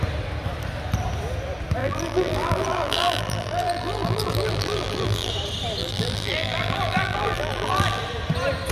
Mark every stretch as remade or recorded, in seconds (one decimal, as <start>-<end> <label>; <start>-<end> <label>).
0.0-1.8 recorded; 1.8-5.3 remade; 5.3-5.8 recorded; 5.8-8.0 remade; 8.0-8.7 recorded